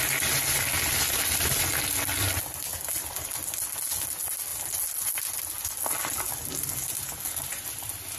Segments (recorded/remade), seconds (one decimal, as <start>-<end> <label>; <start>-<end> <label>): 0.0-8.2 recorded

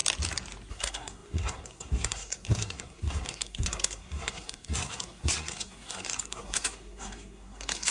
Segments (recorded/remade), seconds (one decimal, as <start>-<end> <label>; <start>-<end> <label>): 0.0-0.7 recorded; 0.7-7.9 remade